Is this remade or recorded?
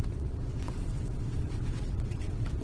remade